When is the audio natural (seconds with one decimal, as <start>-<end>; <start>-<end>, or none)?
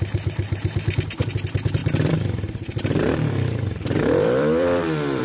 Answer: 0.0-1.8